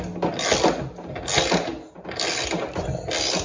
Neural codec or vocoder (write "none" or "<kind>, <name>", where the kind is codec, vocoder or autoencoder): none